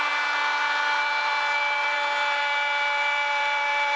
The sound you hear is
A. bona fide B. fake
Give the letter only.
B